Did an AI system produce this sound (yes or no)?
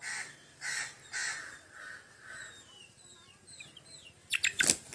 no